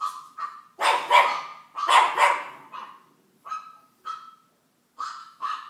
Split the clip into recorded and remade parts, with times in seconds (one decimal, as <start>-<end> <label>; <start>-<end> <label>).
0.0-5.2 recorded; 5.2-5.7 remade